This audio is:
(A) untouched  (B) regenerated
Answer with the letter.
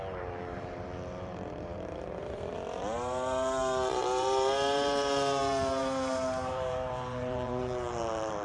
B